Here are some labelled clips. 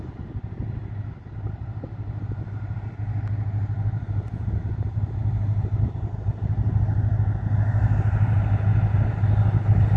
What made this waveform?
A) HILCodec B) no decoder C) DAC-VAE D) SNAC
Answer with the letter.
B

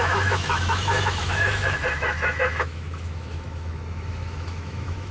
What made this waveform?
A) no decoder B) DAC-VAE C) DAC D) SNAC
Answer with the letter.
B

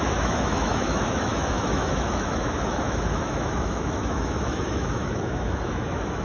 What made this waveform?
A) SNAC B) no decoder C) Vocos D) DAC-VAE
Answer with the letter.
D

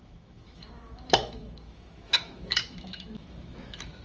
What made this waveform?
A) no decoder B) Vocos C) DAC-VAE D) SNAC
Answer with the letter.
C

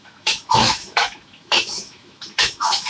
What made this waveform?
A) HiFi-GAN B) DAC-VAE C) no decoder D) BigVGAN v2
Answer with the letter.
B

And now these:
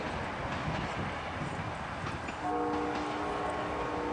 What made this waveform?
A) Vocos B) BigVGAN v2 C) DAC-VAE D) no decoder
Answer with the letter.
D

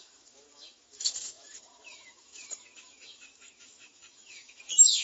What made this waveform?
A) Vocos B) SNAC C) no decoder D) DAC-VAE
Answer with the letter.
D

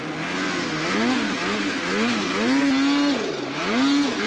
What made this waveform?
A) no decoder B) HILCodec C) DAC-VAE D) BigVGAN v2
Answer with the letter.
A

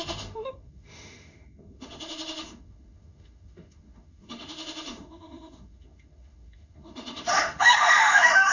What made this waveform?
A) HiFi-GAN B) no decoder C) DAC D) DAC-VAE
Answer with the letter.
D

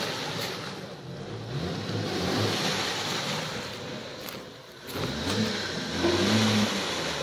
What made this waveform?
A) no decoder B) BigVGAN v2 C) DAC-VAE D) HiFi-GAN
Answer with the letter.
A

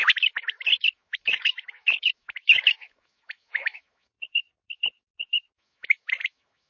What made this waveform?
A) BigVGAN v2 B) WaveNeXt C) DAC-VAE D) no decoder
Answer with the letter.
C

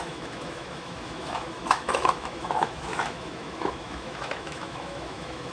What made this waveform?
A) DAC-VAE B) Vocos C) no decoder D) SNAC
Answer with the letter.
A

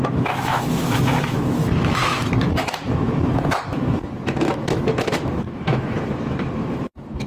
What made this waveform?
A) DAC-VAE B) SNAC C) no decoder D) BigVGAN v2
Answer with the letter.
A